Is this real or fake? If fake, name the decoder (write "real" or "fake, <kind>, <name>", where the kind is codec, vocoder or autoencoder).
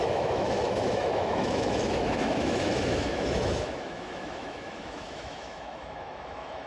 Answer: fake, autoencoder, DAC-VAE